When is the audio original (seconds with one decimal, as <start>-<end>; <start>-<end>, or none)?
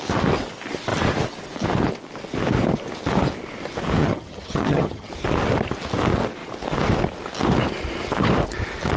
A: 0.0-4.0; 5.1-9.0